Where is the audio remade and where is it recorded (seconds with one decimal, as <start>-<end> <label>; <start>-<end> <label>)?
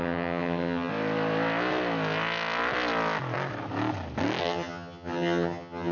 0.0-0.9 remade; 0.9-4.4 recorded; 4.4-5.9 remade